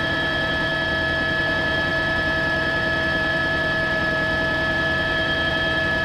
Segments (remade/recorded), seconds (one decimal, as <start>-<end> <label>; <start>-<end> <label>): 0.0-0.7 remade; 0.7-1.4 recorded; 1.4-6.0 remade